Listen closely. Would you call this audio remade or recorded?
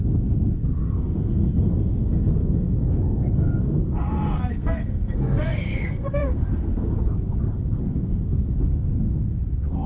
remade